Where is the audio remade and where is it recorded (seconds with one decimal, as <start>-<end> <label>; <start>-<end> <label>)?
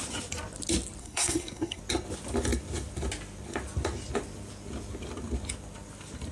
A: 0.0-1.0 recorded; 1.0-1.8 remade; 1.8-6.3 recorded